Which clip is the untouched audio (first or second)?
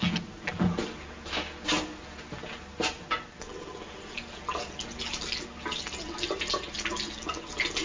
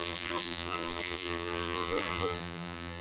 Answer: first